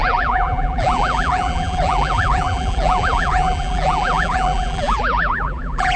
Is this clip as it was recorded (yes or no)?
no